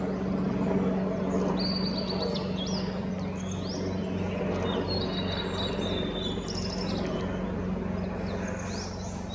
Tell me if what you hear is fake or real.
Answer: real